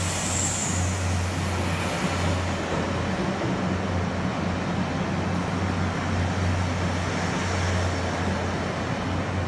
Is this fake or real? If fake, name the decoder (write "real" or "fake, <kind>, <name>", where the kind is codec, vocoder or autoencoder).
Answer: real